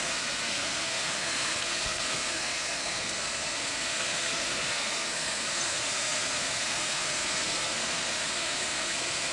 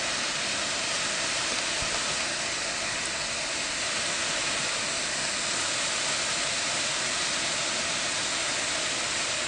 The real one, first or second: second